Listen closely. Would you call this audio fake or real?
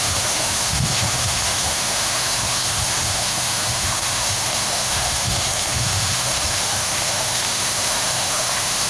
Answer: fake